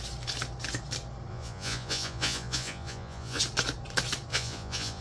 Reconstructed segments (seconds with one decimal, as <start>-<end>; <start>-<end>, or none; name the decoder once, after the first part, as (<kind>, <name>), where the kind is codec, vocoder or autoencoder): 1.3-3.4 (vocoder, Vocos); 4.3-5.0